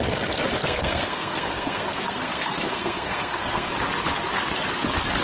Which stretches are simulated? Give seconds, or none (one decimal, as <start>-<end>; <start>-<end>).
0.6-3.7